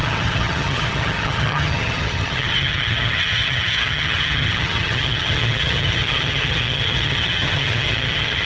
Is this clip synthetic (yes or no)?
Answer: yes